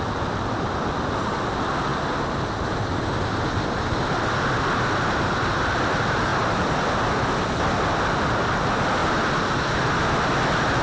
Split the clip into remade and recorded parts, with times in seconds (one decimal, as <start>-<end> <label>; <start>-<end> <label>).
0.0-9.0 recorded; 9.0-9.6 remade; 9.6-10.8 recorded